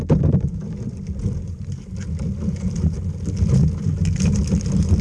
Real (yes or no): yes